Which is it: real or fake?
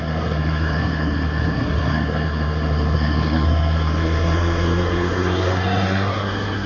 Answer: fake